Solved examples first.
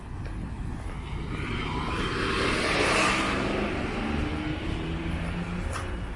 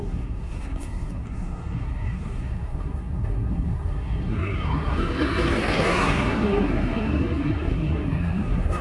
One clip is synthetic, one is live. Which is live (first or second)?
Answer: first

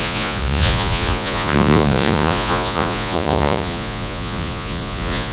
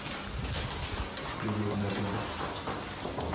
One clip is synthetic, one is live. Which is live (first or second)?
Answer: second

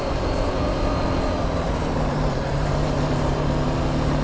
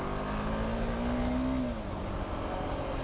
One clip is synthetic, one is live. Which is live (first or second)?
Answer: second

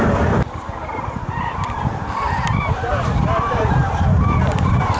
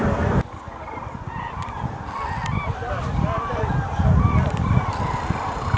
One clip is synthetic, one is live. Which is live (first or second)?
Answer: second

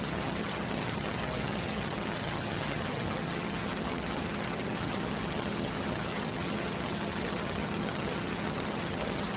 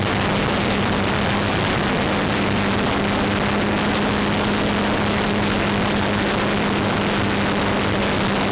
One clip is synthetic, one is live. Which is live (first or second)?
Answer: second